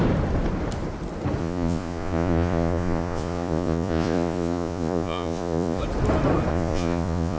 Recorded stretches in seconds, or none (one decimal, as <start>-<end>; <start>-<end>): 0.0-1.4; 5.8-6.5